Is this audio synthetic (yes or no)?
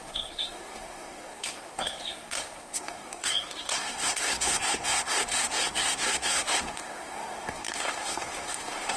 yes